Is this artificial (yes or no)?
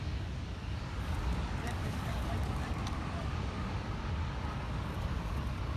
yes